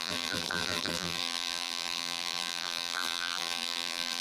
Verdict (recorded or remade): remade